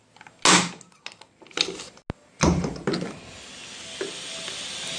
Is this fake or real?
real